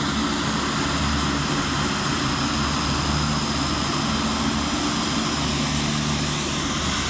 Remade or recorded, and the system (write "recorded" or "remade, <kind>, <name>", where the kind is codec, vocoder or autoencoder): recorded